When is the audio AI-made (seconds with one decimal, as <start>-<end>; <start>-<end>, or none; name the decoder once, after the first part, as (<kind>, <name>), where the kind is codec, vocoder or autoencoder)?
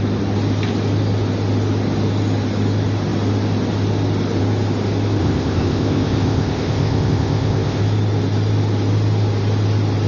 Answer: 5.2-7.8 (codec, ZipCodec)